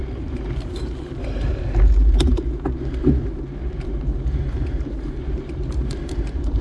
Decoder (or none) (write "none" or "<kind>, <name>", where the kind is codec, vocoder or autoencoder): vocoder, BigVGAN v2